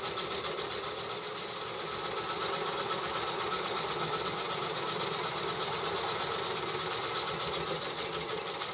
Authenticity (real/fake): real